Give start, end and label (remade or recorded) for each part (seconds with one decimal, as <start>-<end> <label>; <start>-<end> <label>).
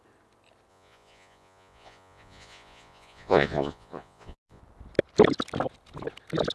0.0-0.7 recorded; 0.7-4.6 remade; 4.6-6.5 recorded